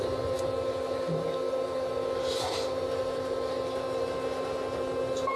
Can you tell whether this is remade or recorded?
recorded